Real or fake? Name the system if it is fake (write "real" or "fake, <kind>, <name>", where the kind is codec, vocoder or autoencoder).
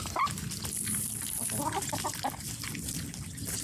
real